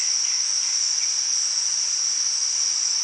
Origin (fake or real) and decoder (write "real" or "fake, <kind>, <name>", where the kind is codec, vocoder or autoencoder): real